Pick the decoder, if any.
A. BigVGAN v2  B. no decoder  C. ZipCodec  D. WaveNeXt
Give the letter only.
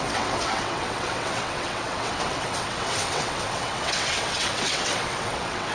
D